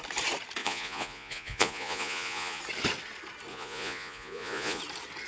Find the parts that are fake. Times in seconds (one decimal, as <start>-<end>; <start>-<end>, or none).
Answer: 0.6-2.6; 3.5-4.8